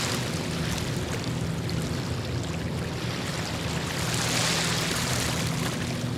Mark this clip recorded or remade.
recorded